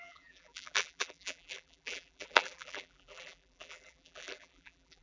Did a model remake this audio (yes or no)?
yes